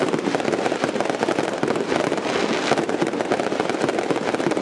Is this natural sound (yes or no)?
yes